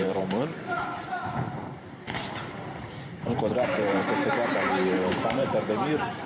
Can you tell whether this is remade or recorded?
remade